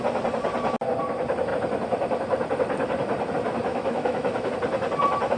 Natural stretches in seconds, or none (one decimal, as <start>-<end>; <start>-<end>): 0.0-3.7; 4.5-5.4